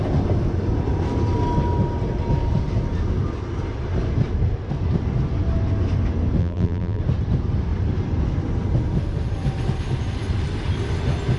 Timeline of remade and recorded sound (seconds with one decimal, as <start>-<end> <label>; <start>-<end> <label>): 0.0-6.4 recorded; 6.4-7.0 remade; 7.0-11.4 recorded